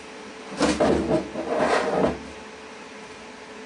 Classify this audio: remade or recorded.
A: recorded